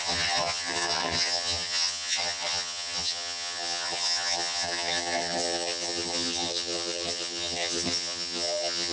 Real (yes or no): no